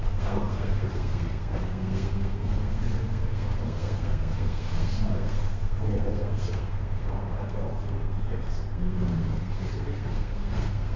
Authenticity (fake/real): fake